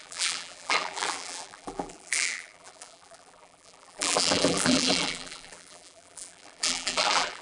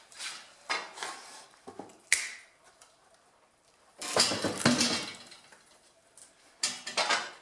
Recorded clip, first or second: second